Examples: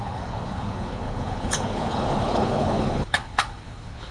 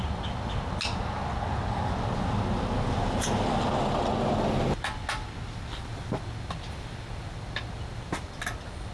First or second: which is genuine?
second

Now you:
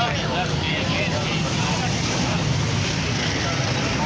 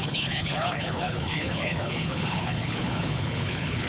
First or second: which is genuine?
first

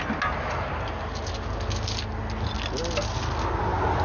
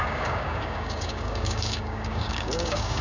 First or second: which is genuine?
first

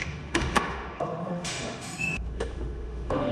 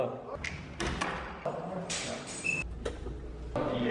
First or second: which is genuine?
second